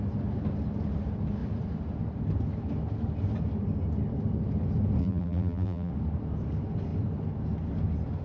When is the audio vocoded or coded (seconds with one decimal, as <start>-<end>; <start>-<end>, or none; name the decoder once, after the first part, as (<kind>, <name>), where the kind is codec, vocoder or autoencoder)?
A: 5.0-5.9 (vocoder, BigVGAN v2)